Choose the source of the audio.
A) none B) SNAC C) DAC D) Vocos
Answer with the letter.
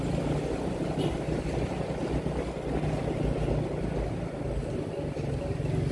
A